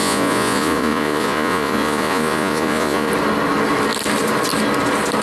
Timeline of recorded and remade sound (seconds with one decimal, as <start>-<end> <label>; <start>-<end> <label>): 0.0-3.1 remade; 3.1-5.2 recorded